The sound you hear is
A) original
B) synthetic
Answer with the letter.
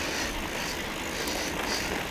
A